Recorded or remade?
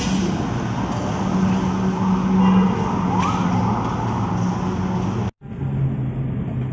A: recorded